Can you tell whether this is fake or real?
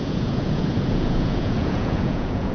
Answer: fake